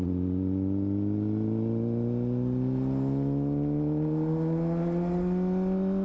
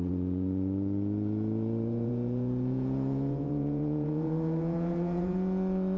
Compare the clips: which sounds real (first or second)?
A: first